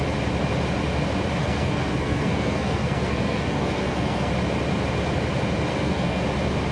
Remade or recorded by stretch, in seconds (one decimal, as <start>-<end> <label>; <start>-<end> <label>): 0.0-1.4 recorded; 1.4-4.3 remade; 4.3-5.7 recorded; 5.7-6.2 remade; 6.2-6.7 recorded